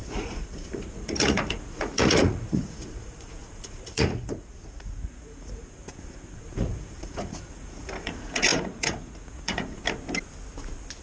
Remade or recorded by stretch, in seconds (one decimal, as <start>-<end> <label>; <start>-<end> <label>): 0.0-9.8 remade; 9.8-11.0 recorded